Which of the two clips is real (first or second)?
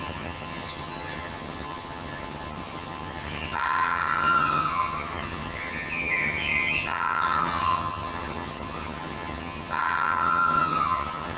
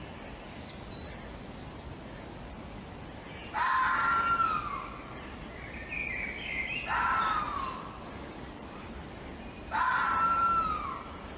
second